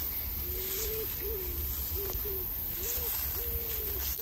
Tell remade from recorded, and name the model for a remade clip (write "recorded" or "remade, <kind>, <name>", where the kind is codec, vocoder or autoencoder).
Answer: recorded